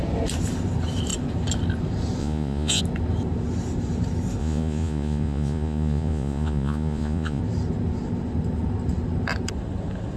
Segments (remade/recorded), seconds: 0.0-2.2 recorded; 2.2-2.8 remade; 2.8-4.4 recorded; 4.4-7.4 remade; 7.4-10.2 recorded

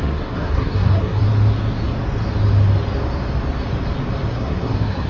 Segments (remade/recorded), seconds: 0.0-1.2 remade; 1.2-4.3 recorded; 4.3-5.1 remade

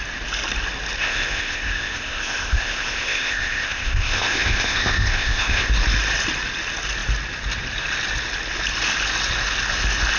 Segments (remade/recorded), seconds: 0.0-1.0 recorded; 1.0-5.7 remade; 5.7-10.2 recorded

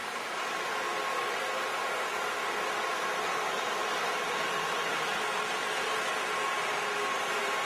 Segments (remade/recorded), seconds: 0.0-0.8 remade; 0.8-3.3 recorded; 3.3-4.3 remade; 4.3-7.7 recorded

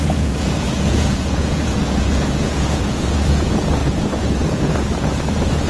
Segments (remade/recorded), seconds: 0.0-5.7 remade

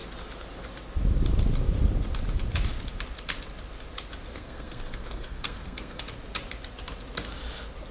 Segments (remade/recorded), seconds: 0.0-4.3 recorded; 4.3-6.0 remade; 6.0-7.9 recorded